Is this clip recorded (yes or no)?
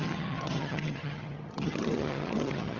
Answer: no